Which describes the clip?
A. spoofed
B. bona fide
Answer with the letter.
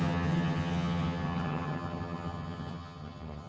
A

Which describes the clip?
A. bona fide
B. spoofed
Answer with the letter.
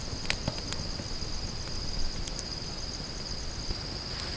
A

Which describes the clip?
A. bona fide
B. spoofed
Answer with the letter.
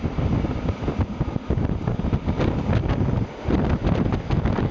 A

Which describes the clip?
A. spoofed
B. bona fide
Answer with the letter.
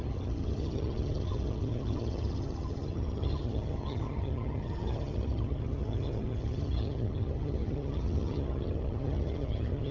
A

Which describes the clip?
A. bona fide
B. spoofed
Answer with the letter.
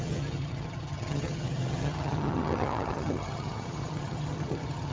B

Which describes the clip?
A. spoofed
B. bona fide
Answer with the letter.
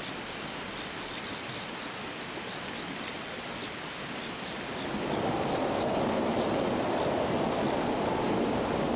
B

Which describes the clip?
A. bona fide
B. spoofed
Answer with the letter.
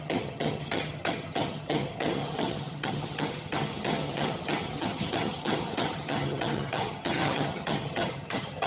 B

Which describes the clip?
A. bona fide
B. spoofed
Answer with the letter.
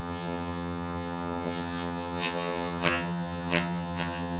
B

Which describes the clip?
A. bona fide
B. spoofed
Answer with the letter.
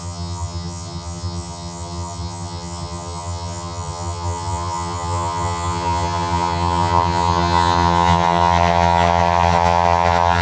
B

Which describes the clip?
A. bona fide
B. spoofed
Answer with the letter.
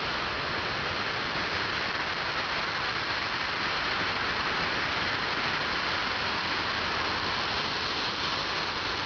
A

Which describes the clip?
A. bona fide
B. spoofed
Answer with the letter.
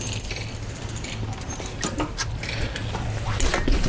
A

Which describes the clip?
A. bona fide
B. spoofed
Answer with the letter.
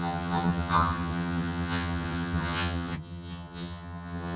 B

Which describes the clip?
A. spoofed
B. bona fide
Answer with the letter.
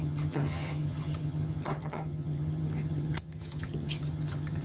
A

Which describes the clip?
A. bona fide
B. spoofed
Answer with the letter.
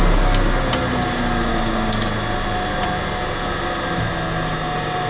A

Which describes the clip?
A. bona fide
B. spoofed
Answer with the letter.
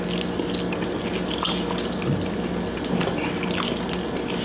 A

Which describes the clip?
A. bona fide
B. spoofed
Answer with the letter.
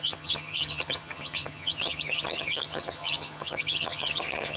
B